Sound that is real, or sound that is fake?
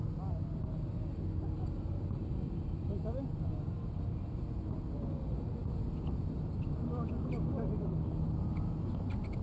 real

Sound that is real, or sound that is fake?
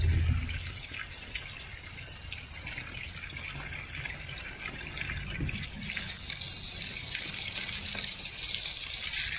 real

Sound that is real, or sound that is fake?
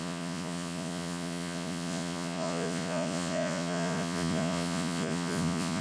fake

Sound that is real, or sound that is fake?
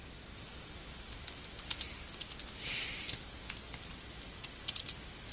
real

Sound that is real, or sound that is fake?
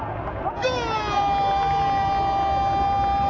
real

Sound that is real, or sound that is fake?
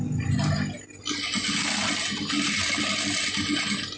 real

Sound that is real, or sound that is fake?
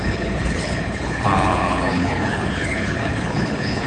fake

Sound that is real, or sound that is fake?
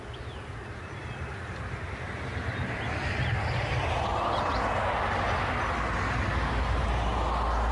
real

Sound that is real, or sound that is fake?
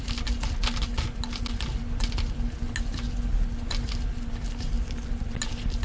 real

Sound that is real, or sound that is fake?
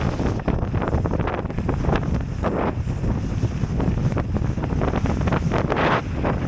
real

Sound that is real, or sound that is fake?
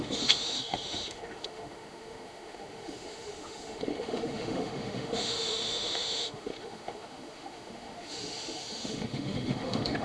fake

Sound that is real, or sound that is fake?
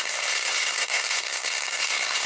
fake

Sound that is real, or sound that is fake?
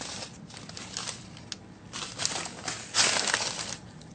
real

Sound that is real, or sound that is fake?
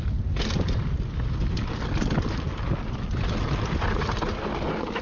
real